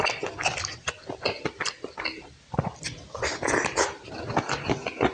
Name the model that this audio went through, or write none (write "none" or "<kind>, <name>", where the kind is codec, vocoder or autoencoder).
none